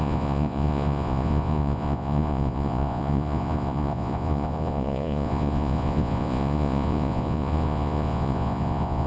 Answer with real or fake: fake